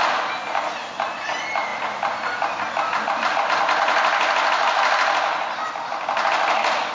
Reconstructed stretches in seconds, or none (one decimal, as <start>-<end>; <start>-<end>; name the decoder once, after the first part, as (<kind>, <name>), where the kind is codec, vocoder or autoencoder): none